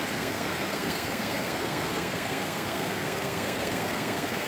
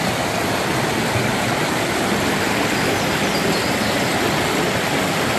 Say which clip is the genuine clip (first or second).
second